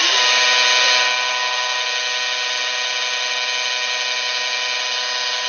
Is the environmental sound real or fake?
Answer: real